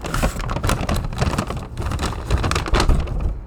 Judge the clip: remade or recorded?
recorded